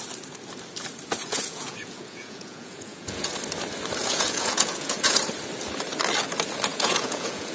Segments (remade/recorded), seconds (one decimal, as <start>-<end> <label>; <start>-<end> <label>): 0.0-1.2 recorded; 1.2-3.3 remade; 3.3-4.0 recorded; 4.0-5.2 remade; 5.2-6.7 recorded; 6.7-7.5 remade